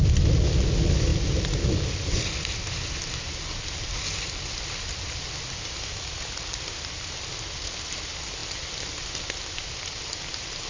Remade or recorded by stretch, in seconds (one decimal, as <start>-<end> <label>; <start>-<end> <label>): 0.0-10.7 recorded